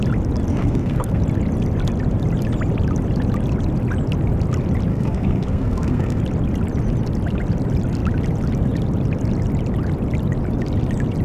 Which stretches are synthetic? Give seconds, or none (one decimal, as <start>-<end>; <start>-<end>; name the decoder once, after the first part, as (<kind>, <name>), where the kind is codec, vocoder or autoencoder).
0.5-1.2 (codec, SNAC); 4.9-6.2